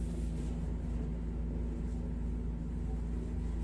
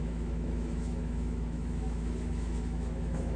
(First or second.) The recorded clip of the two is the first